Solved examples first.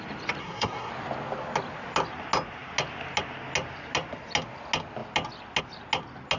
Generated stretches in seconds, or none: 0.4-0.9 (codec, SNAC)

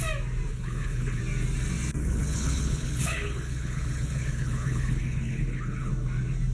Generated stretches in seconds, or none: 0.5-1.2 (codec, HILCodec); 2.0-5.9

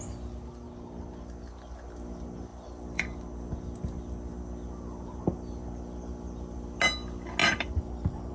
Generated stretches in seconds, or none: 2.5-3.0 (vocoder, BigVGAN v2); 7.4-8.3

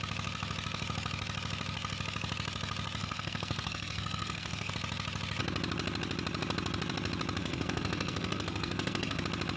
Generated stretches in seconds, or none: 3.0-4.7 (codec, SNAC); 7.4-9.2